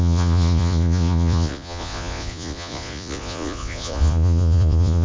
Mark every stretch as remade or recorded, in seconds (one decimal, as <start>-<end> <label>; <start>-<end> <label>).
0.0-5.0 remade